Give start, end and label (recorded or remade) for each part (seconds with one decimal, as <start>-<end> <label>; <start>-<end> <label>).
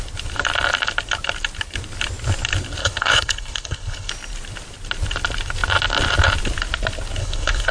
0.0-2.8 recorded; 2.8-4.1 remade; 4.1-7.2 recorded; 7.2-7.7 remade